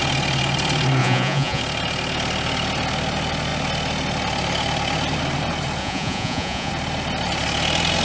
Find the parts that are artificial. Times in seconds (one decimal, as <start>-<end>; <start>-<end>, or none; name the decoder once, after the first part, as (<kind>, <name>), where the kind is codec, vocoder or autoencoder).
1.0-1.6 (vocoder, Vocos); 5.8-6.7